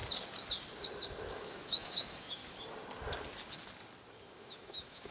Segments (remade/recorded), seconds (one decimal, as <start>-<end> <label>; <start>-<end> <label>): 0.0-1.3 recorded; 1.3-2.4 remade; 2.4-4.4 recorded; 4.4-5.1 remade